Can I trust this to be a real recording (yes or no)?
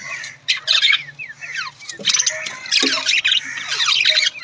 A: yes